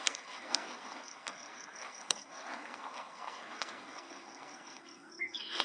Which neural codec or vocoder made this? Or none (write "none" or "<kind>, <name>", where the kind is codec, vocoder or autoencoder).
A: codec, SNAC